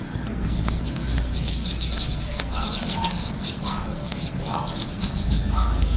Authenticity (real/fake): fake